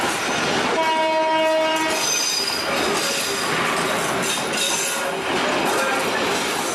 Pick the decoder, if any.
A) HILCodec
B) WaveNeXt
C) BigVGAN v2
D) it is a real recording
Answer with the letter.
D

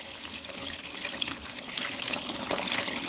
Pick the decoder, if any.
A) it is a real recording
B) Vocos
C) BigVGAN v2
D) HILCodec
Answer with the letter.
D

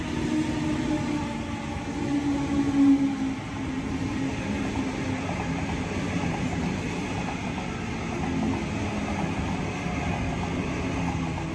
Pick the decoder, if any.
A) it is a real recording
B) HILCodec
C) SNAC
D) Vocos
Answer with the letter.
A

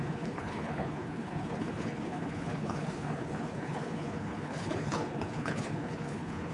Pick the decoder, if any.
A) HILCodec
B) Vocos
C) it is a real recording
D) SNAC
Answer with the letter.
A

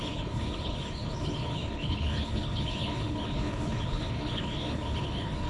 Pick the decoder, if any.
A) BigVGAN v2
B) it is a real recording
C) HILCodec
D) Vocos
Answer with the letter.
C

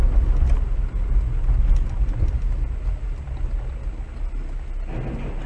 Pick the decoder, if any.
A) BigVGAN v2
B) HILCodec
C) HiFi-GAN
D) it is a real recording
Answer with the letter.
D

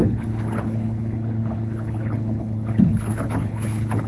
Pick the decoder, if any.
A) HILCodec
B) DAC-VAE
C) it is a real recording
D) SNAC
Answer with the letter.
A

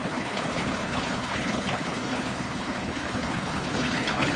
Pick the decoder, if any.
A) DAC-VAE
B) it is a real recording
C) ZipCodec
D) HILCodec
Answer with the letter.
D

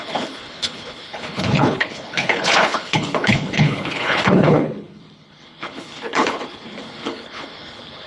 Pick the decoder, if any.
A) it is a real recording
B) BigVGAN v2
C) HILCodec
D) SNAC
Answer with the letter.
C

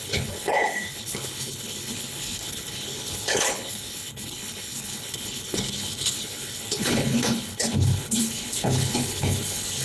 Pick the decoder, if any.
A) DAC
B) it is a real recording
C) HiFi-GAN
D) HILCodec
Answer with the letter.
D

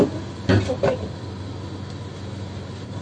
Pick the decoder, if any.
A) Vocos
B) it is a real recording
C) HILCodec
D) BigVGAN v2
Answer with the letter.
B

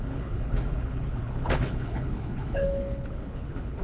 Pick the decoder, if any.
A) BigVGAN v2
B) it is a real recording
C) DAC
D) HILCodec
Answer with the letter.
D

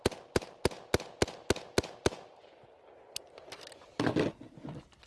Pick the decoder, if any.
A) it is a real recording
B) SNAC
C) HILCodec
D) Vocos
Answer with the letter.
A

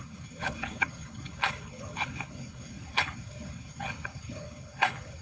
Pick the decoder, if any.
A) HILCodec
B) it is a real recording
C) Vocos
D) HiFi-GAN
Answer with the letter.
A